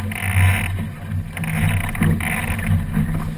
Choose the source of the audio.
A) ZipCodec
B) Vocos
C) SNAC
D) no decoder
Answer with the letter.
D